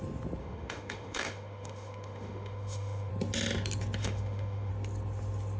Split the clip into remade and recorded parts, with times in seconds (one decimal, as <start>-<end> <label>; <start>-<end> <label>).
0.0-0.4 recorded; 0.4-3.1 remade; 3.1-4.0 recorded; 4.0-4.7 remade; 4.7-5.6 recorded